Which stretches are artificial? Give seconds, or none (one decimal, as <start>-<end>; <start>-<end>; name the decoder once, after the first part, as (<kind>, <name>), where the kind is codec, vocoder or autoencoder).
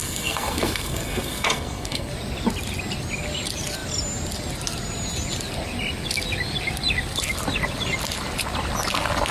0.0-2.1 (codec, SNAC)